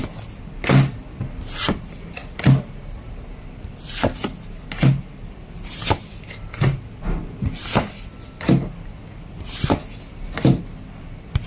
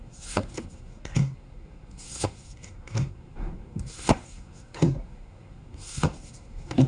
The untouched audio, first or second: first